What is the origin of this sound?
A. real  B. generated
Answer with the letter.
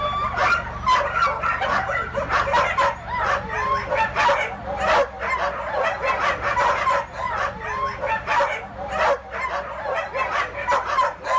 A